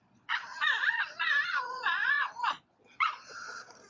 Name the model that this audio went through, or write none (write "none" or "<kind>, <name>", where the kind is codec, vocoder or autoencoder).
vocoder, Vocos